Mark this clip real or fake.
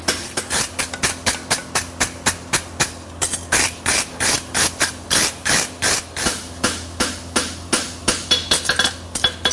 real